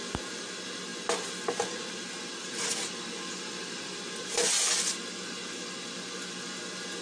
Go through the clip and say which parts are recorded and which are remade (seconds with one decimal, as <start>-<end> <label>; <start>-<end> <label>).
0.0-7.0 recorded